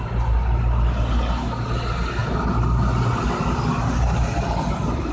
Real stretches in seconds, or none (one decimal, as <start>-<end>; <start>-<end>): 0.0-5.1